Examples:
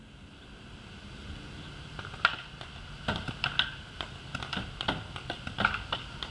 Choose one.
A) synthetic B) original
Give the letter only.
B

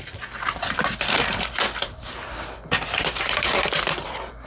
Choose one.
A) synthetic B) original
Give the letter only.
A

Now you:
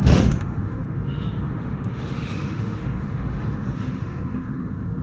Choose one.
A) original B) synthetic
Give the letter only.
B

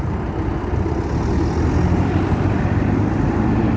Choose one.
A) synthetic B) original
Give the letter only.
B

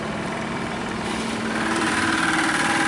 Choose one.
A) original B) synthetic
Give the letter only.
B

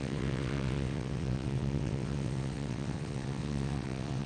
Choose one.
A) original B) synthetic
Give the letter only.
B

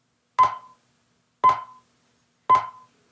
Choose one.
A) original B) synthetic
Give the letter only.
A